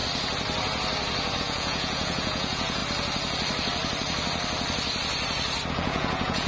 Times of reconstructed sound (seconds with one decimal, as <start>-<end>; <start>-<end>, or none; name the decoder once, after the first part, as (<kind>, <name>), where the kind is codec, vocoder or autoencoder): 1.4-2.8 (vocoder, Vocos); 5.7-6.5